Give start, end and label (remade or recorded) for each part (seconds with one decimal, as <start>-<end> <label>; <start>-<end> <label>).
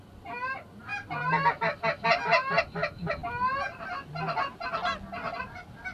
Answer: 0.0-5.9 recorded